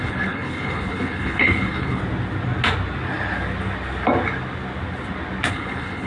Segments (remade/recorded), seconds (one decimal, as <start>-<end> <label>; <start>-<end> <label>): 0.0-2.0 remade; 2.0-5.5 recorded; 5.5-6.1 remade